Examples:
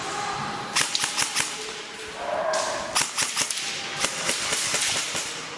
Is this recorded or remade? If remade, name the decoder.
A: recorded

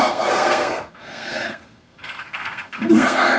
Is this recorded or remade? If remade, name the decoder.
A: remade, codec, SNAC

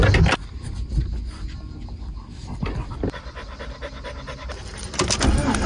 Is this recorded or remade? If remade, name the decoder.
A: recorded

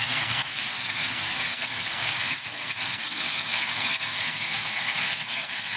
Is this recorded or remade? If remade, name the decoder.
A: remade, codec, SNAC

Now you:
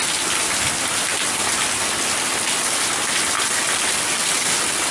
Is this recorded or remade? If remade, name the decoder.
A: recorded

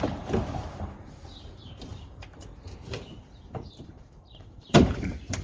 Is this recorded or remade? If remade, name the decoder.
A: remade, vocoder, BigVGAN v2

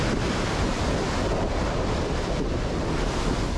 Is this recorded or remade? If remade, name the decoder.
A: recorded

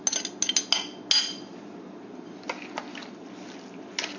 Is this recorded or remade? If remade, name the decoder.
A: recorded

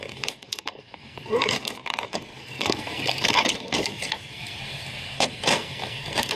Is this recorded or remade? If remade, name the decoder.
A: remade, codec, SNAC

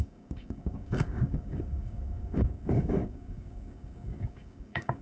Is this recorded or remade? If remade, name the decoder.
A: remade, codec, DAC